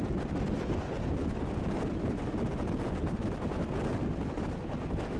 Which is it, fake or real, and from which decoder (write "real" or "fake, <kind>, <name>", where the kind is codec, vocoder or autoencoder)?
real